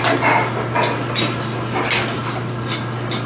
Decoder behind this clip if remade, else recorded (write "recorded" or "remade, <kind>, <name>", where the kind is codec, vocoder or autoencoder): recorded